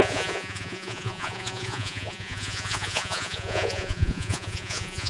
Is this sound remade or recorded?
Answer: remade